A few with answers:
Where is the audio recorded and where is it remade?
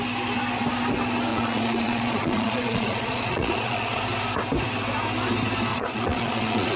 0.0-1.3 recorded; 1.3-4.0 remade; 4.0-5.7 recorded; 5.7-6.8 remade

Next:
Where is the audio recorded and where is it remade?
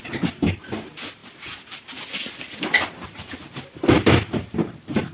0.0-5.1 recorded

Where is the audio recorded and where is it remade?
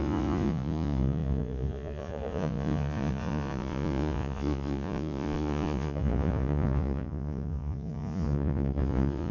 0.0-9.3 remade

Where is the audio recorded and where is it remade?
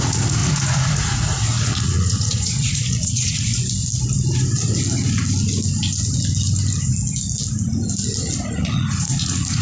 0.0-3.5 remade; 3.5-8.6 recorded; 8.6-9.6 remade